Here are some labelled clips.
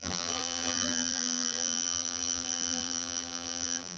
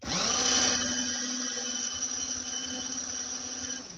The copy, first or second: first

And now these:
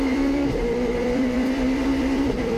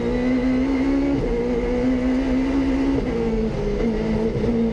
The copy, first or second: first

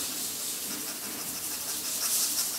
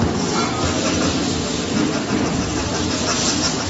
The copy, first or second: first